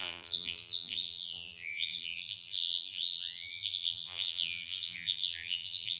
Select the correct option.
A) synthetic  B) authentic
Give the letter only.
A